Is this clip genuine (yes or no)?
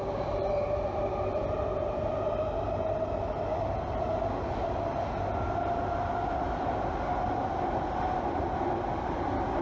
yes